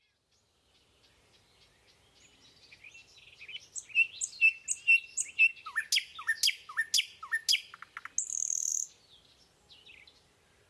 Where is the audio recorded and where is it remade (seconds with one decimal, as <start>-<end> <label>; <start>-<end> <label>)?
0.0-10.7 recorded